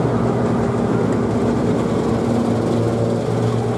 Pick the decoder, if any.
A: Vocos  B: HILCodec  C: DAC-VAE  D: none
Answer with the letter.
D